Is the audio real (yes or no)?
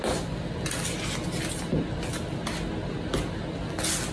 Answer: yes